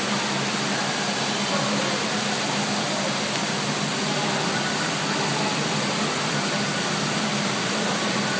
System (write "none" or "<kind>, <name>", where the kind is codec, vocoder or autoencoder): none